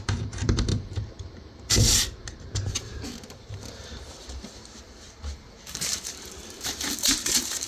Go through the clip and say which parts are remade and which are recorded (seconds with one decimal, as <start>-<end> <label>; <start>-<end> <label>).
0.0-7.7 remade

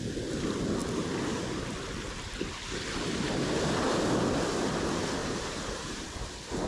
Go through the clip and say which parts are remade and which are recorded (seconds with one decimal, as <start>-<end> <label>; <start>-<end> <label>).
0.0-5.2 recorded; 5.2-6.0 remade; 6.0-6.7 recorded

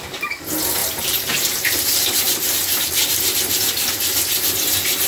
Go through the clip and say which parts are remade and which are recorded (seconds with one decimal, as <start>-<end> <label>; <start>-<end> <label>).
0.0-0.8 recorded; 0.8-3.9 remade; 3.9-5.1 recorded

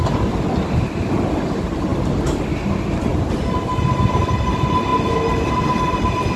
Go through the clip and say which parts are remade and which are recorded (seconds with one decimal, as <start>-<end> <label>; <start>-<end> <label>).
0.0-6.4 recorded